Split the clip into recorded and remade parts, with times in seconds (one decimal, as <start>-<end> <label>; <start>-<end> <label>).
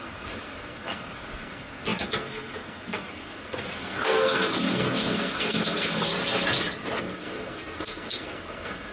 0.0-6.1 remade; 6.1-7.0 recorded; 7.0-8.9 remade